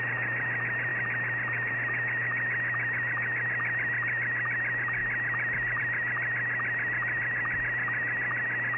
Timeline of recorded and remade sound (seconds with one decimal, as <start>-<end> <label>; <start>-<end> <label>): 0.0-8.8 recorded